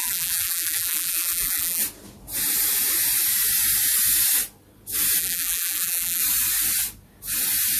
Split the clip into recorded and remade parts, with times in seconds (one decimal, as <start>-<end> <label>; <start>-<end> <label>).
0.0-1.8 remade; 1.8-5.2 recorded; 5.2-6.2 remade; 6.2-7.8 recorded